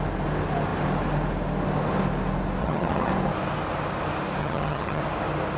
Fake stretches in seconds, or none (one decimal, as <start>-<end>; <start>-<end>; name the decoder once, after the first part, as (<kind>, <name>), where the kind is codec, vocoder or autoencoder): 2.6-3.1 (vocoder, HiFi-GAN); 4.4-5.0